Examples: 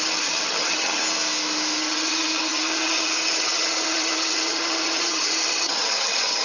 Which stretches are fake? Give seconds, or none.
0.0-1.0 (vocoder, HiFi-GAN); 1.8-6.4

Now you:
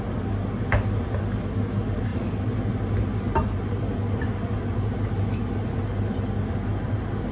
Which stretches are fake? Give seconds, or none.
none

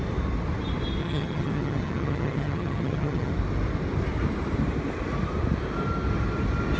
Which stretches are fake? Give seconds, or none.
1.0-3.3 (vocoder, HiFi-GAN)

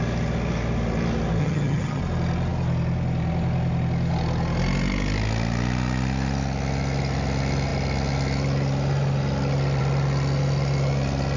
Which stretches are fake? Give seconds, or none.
1.4-2.0 (vocoder, HiFi-GAN)

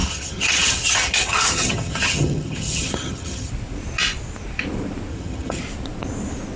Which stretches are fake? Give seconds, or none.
0.0-3.5 (vocoder, HiFi-GAN); 5.1-5.6